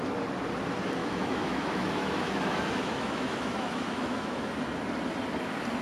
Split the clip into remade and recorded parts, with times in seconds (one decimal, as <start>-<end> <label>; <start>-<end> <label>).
0.0-1.0 recorded; 1.0-4.5 remade; 4.5-5.8 recorded